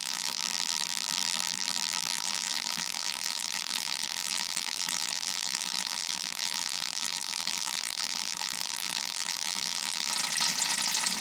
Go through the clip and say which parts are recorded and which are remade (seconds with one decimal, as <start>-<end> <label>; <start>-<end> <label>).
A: 0.0-10.1 remade; 10.1-11.2 recorded